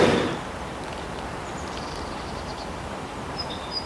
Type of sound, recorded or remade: remade